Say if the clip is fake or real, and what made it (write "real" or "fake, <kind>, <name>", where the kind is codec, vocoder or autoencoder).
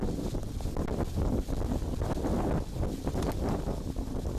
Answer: real